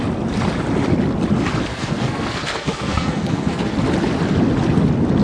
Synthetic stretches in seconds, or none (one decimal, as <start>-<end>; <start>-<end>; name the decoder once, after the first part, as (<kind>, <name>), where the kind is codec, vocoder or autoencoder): 1.7-3.7 (codec, SNAC)